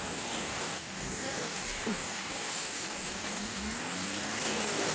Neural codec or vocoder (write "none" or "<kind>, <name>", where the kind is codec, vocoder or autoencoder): codec, DAC